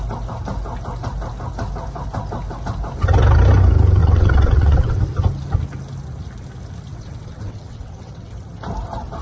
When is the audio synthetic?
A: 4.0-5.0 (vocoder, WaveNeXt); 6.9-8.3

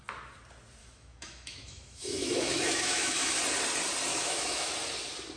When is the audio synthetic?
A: 0.8-3.4 (autoencoder, DAC-VAE); 4.1-4.7

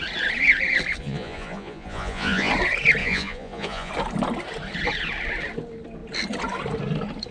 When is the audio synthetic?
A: 1.0-2.5 (vocoder, Vocos); 3.0-3.9

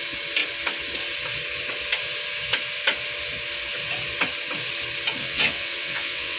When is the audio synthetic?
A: 5.2-6.4 (vocoder, WaveNeXt)

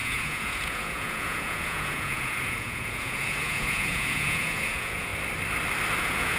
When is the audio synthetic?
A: 0.0-5.1 (vocoder, Vocos); 6.0-6.4

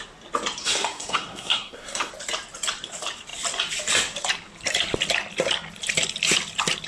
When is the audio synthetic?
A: 0.6-2.1 (codec, SNAC)

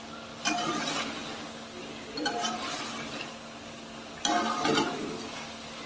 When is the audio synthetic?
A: none

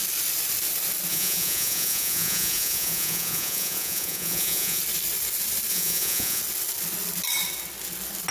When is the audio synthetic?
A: 1.1-4.8 (vocoder, Vocos); 5.7-6.4